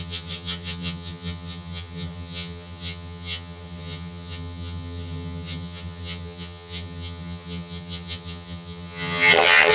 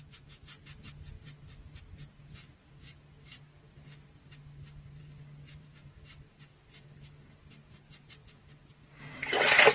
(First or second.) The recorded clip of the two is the second